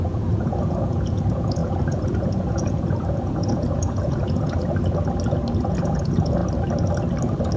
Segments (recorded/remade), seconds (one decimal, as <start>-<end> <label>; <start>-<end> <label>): 0.0-4.6 remade; 4.6-5.6 recorded; 5.6-6.4 remade; 6.4-7.6 recorded

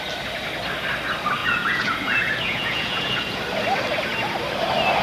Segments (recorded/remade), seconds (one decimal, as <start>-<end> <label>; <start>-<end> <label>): 0.0-1.4 recorded; 1.4-3.4 remade; 3.4-5.0 recorded

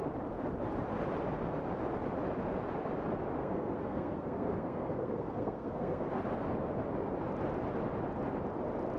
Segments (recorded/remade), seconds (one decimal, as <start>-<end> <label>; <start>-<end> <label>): 0.0-3.4 recorded; 3.4-6.2 remade; 6.2-9.0 recorded

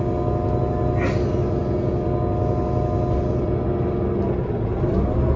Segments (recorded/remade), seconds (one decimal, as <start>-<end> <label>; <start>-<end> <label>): 0.0-5.4 recorded

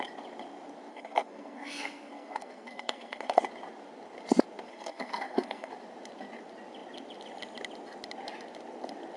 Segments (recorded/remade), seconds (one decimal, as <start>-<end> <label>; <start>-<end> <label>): 0.0-0.9 recorded; 0.9-3.4 remade; 3.4-4.7 recorded; 4.7-5.7 remade; 5.7-9.2 recorded